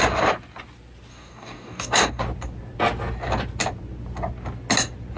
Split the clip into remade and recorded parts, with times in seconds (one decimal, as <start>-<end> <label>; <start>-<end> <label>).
0.0-1.1 recorded; 1.1-2.2 remade; 2.2-5.2 recorded